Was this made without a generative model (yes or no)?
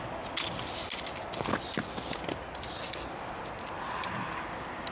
yes